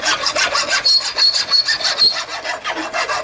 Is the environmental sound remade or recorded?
recorded